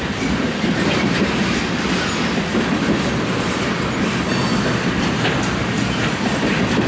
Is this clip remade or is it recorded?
recorded